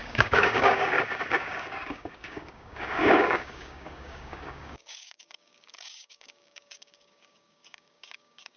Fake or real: fake